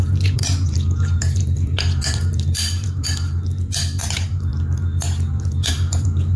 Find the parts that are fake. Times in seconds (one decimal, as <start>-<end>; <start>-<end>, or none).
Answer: 0.0-4.5; 5.7-6.4